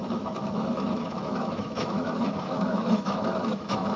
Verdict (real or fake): fake